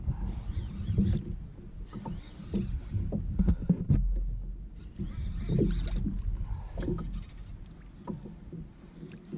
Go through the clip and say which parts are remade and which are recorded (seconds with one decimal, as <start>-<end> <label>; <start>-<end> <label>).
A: 0.0-9.4 recorded